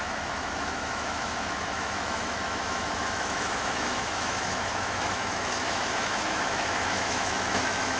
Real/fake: fake